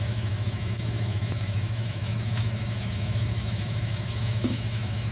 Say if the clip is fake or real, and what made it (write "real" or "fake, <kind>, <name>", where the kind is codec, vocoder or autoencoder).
fake, autoencoder, DAC-VAE